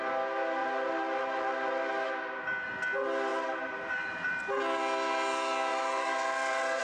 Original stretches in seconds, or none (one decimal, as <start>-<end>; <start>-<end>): 0.0-0.6; 1.9-3.3; 4.4-5.7